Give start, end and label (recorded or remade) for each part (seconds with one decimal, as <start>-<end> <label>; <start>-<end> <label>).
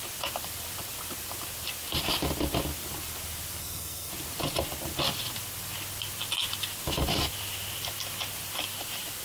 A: 0.0-3.6 recorded; 3.6-4.1 remade; 4.1-9.2 recorded